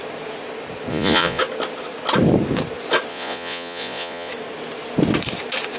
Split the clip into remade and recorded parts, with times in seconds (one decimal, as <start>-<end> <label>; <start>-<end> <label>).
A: 0.0-0.9 recorded; 0.9-1.4 remade; 1.4-3.1 recorded; 3.1-4.3 remade; 4.3-5.8 recorded